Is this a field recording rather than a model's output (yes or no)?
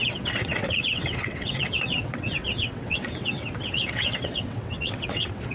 no